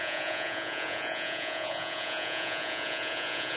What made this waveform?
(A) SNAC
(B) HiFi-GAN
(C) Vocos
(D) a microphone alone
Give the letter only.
C